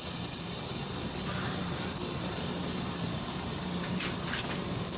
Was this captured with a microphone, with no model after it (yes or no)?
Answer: no